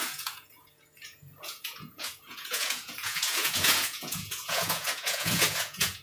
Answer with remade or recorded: remade